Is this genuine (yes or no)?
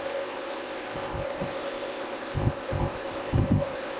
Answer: no